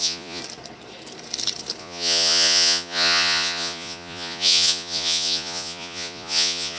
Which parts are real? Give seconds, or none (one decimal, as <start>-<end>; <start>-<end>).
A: 0.4-1.8